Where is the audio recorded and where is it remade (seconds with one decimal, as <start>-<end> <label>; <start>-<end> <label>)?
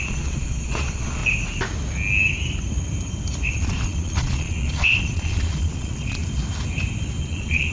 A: 0.0-1.2 remade; 1.2-3.5 recorded; 3.5-6.2 remade; 6.2-7.2 recorded; 7.2-7.7 remade